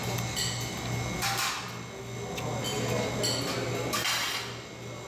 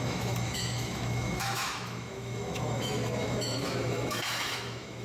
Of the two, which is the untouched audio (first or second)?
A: first